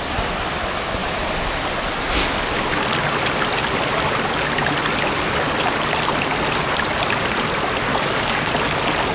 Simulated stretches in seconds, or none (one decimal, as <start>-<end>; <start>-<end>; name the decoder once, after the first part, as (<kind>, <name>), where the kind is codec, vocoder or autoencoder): 7.9-8.5 (codec, DAC)